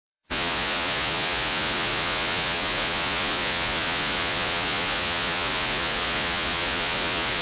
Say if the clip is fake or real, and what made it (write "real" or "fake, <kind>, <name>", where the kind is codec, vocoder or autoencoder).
fake, vocoder, Vocos